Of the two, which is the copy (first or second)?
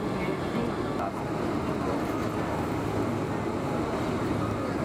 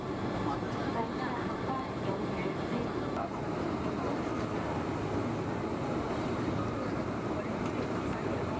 second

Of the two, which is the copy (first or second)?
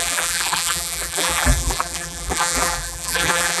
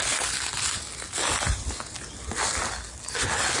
first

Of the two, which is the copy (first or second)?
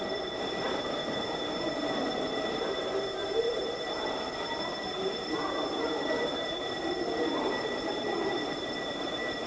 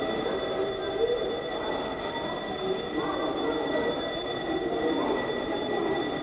first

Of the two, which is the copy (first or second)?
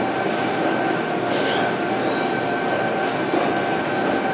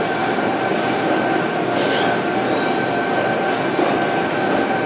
second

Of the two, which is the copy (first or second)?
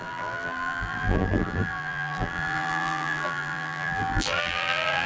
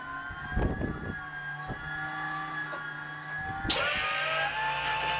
first